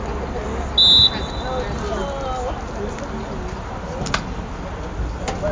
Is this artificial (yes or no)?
no